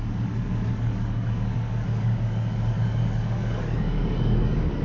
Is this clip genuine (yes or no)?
no